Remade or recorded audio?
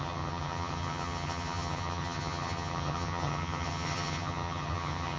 remade